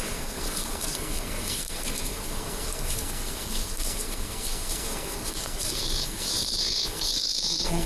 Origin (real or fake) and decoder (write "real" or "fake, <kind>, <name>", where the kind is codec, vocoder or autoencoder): fake, codec, SNAC